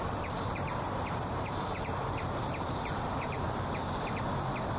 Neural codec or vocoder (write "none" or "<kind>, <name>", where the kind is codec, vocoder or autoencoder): vocoder, BigVGAN v2